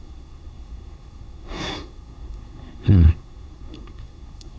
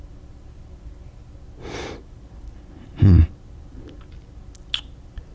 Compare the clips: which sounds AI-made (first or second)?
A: first